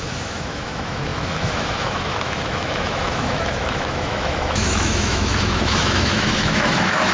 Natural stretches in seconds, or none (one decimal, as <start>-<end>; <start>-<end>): none